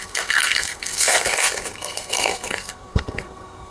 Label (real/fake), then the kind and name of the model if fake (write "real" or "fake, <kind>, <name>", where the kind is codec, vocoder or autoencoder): fake, codec, SNAC